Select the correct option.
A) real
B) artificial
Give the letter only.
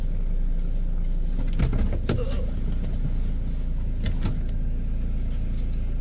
A